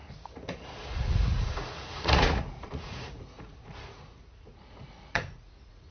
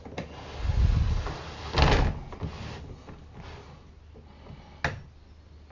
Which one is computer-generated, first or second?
first